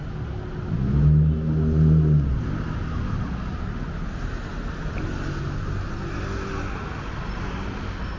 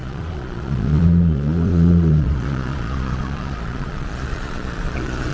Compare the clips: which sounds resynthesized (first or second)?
second